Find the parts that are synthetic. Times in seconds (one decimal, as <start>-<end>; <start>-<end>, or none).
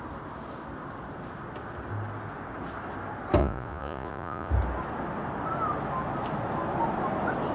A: 3.4-4.5